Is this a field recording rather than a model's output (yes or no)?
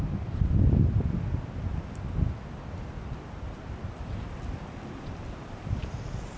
yes